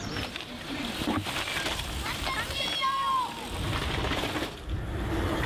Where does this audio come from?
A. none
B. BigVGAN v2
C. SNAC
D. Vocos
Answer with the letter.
B